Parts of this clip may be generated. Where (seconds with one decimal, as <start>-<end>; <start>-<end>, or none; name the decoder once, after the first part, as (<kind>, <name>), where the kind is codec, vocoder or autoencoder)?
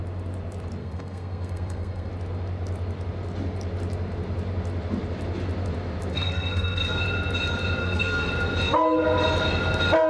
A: 0.8-2.1 (codec, SNAC); 6.1-7.0; 7.8-8.3